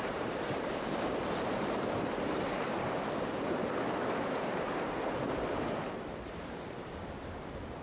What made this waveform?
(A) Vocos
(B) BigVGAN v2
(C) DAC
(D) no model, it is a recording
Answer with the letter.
B